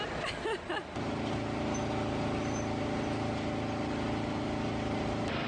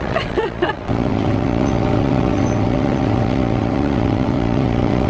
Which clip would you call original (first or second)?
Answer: first